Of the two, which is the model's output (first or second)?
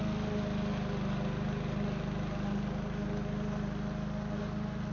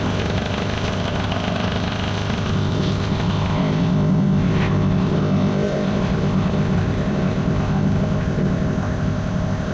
second